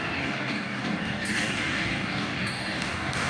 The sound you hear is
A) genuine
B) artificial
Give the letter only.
B